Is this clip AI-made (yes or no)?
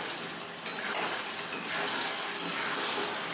no